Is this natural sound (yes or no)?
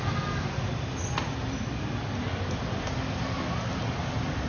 yes